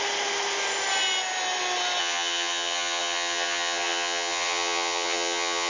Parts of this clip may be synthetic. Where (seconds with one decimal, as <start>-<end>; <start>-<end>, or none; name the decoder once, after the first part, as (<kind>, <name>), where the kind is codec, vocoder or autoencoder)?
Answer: 2.0-5.7 (vocoder, HiFi-GAN)